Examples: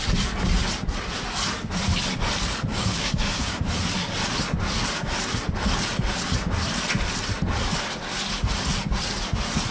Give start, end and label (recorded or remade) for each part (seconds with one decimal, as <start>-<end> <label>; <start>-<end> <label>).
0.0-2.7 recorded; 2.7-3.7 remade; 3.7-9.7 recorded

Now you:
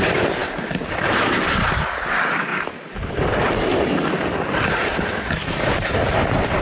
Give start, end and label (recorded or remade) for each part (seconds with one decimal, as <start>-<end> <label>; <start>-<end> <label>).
0.0-0.4 remade; 0.4-2.0 recorded; 2.0-2.5 remade; 2.5-6.6 recorded

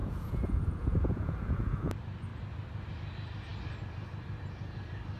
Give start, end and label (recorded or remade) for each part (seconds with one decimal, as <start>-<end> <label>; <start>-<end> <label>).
0.0-1.9 remade; 1.9-5.2 recorded

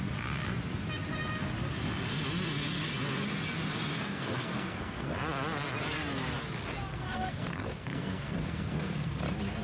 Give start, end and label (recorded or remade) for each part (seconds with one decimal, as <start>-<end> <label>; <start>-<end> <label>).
0.0-3.9 recorded; 3.9-5.1 remade; 5.1-6.9 recorded; 6.9-9.2 remade; 9.2-9.6 recorded

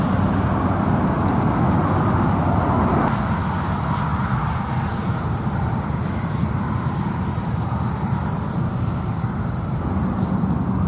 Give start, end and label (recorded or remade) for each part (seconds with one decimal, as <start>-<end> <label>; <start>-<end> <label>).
0.0-4.9 recorded; 4.9-8.4 remade; 8.4-10.9 recorded

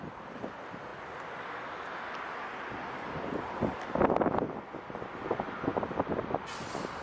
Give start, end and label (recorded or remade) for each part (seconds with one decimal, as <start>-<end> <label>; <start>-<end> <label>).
0.0-7.0 recorded

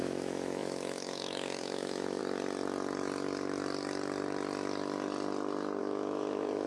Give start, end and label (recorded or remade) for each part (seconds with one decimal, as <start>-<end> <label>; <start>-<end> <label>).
0.0-2.2 remade; 2.2-5.8 recorded; 5.8-6.7 remade

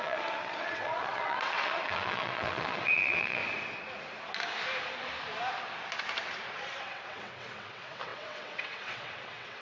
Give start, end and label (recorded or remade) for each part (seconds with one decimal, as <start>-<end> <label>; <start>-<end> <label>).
0.0-3.4 remade; 3.4-6.8 recorded; 6.8-9.6 remade